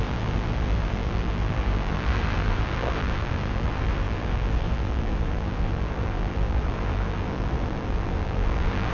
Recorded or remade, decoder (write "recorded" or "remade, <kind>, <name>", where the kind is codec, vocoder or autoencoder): remade, vocoder, BigVGAN v2